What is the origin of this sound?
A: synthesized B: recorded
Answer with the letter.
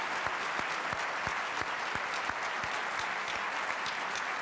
B